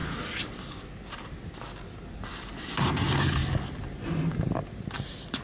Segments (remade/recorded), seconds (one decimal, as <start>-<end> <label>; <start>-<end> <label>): 0.0-3.4 recorded; 3.4-4.5 remade; 4.5-5.4 recorded